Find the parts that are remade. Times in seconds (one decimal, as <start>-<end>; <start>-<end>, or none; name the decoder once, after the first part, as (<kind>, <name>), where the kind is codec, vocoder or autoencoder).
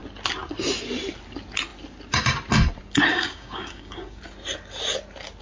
3.1-4.2 (codec, DAC)